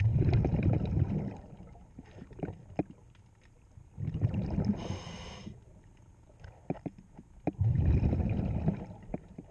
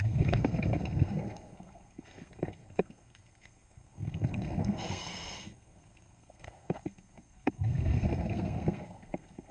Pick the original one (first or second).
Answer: first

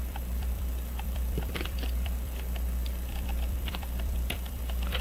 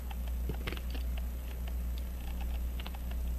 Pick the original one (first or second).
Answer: second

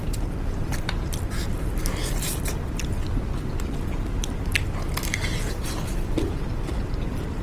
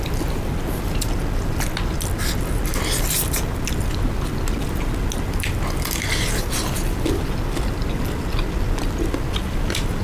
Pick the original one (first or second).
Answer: second